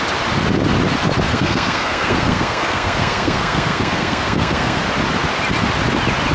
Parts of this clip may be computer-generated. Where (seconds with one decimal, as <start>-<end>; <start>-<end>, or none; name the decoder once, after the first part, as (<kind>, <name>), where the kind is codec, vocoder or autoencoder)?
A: 1.3-4.8 (codec, SNAC)